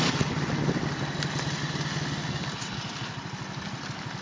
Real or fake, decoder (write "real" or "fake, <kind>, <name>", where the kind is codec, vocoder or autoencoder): real